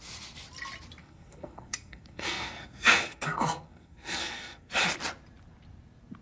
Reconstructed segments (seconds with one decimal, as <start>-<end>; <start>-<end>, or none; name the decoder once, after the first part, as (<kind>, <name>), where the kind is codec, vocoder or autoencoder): 1.0-4.7 (codec, SNAC)